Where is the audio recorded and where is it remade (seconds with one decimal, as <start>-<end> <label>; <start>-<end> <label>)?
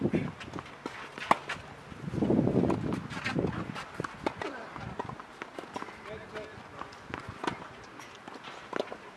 0.0-6.5 recorded; 6.5-7.3 remade; 7.3-9.2 recorded